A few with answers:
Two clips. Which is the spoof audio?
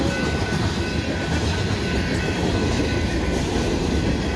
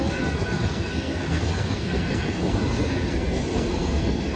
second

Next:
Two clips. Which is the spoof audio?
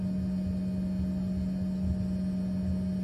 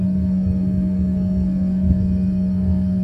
second